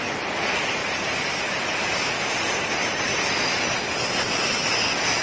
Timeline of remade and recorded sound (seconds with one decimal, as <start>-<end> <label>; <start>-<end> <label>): 0.0-5.2 recorded